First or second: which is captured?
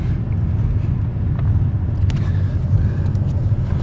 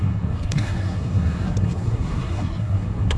first